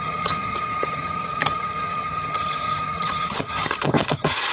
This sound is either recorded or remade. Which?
remade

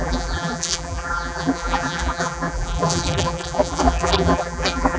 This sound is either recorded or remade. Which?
remade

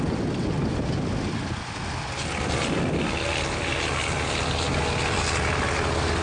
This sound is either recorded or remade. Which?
recorded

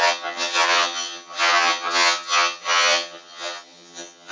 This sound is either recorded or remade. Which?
remade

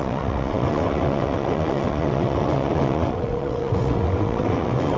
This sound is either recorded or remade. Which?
remade